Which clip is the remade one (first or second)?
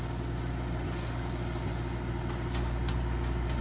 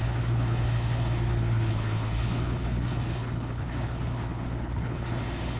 second